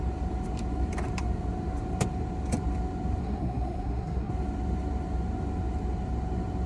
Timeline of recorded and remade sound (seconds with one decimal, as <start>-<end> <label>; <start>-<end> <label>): 0.0-3.2 recorded; 3.2-4.3 remade; 4.3-6.7 recorded